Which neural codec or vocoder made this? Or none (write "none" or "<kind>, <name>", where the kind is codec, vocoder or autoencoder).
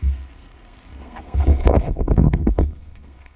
codec, SNAC